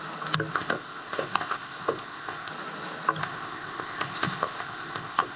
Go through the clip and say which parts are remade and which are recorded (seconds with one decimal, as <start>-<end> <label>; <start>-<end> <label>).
0.0-0.5 recorded; 0.5-2.5 remade; 2.5-3.2 recorded; 3.2-5.4 remade